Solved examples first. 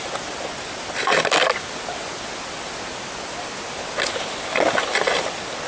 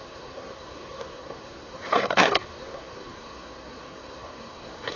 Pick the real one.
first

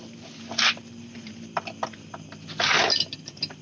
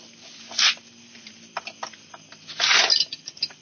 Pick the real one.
second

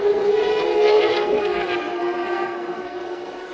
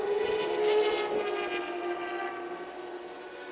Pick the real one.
second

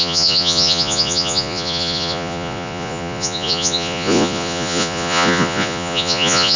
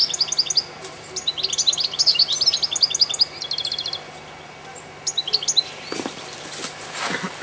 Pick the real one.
second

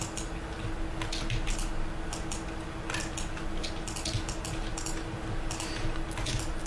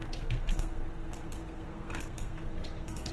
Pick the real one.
first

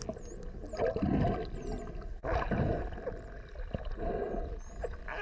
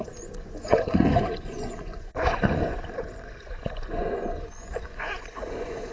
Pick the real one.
first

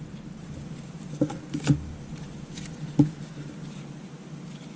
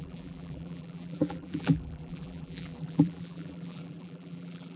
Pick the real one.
first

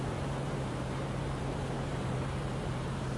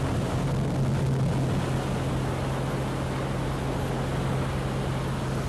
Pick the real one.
second